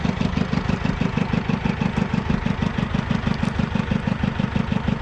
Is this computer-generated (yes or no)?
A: no